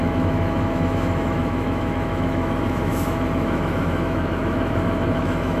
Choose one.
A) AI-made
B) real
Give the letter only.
A